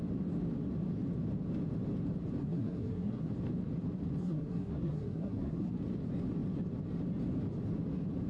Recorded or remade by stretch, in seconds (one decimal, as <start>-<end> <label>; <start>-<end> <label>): 0.0-2.4 recorded; 2.4-3.3 remade; 3.3-4.2 recorded; 4.2-5.7 remade; 5.7-8.3 recorded